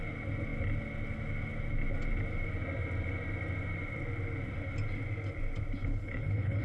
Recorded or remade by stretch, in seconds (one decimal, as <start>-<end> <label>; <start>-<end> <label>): 0.0-5.8 recorded; 5.8-6.6 remade